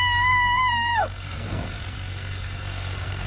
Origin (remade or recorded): remade